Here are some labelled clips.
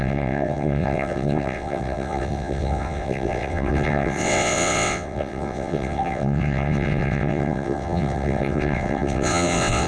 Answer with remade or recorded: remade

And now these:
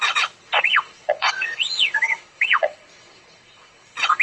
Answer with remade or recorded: remade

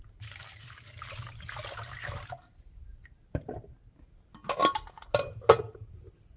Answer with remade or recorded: recorded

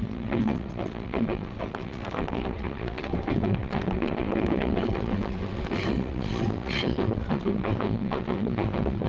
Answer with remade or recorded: remade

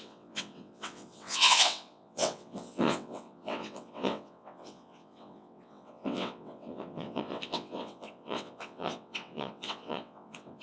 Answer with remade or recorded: remade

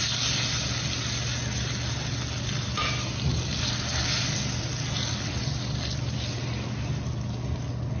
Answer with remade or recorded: recorded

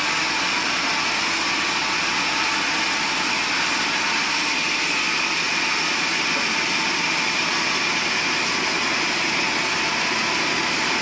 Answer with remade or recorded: recorded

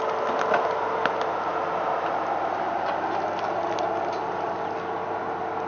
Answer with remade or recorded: recorded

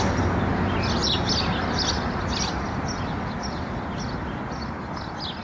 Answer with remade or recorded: recorded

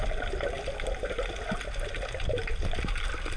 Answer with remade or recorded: recorded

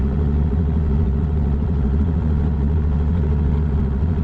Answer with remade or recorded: remade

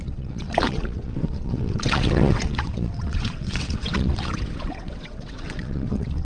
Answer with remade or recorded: remade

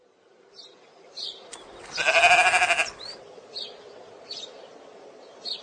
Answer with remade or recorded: recorded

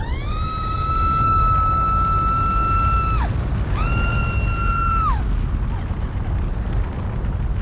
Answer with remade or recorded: recorded